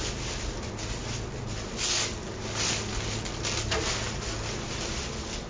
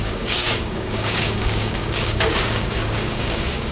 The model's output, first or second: second